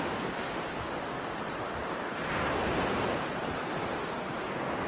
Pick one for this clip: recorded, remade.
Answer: recorded